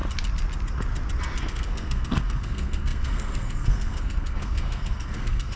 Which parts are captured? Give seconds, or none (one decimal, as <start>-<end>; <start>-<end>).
0.0-1.4